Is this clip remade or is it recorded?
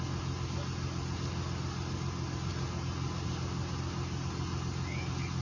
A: recorded